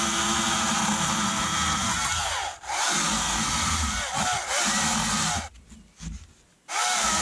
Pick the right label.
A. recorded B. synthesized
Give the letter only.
A